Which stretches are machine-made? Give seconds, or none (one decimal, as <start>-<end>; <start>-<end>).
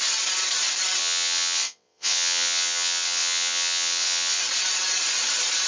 1.0-4.4